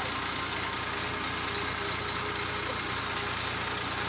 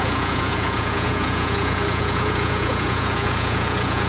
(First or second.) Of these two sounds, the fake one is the second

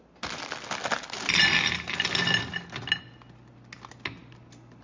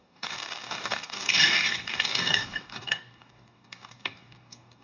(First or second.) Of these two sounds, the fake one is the second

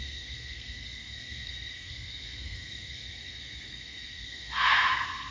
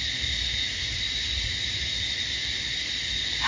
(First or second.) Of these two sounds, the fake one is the first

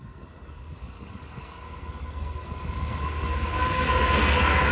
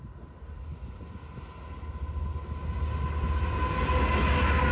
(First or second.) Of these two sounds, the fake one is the first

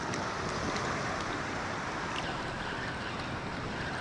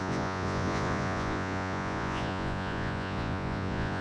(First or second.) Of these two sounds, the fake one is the second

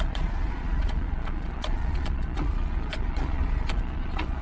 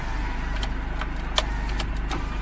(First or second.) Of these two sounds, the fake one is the first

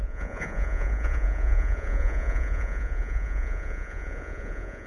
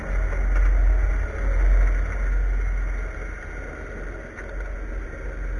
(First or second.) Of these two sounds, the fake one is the first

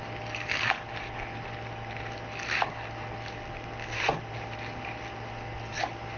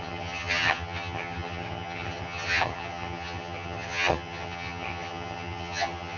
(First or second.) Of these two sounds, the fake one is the second